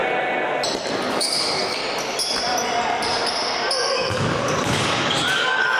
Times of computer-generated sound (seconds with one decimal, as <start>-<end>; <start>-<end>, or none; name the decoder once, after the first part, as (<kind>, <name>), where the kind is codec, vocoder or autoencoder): 1.1-1.8 (codec, DAC); 3.7-5.8

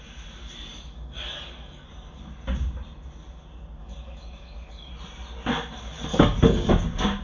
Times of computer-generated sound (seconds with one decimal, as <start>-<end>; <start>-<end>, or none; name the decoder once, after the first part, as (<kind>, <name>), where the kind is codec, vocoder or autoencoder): 0.7-2.2 (codec, DAC); 3.8-4.9; 6.1-6.7